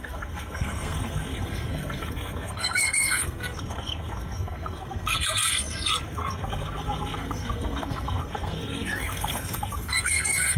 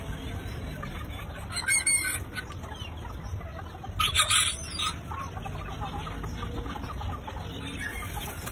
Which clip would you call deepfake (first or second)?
first